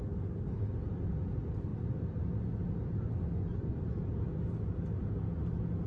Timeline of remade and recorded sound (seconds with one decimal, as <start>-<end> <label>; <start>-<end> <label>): 0.0-5.9 recorded